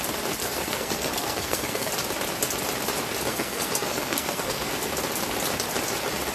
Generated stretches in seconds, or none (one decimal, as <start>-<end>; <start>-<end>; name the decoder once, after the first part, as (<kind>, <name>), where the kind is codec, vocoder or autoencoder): 0.4-1.9 (codec, SNAC); 3.3-4.7